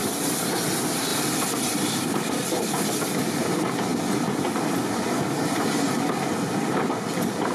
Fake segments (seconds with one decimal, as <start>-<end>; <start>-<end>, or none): 0.0-0.5; 1.1-2.7